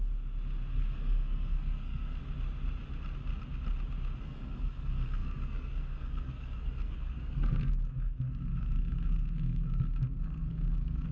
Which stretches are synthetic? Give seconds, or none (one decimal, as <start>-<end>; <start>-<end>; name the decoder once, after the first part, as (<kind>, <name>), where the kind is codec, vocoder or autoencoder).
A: 0.7-2.2 (codec, SNAC); 4.2-11.1